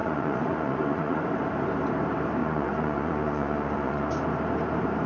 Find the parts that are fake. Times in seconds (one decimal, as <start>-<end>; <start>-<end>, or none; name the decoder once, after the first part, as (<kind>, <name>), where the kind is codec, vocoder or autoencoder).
0.0-1.2 (vocoder, Vocos); 2.4-4.1